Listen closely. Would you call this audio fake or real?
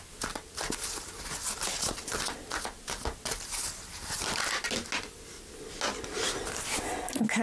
real